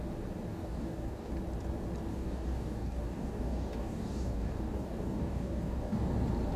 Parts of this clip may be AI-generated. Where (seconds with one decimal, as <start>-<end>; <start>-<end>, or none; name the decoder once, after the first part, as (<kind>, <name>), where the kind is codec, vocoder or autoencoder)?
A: 0.5-1.3 (codec, DAC); 2.1-6.1